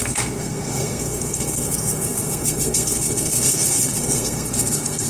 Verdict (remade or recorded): remade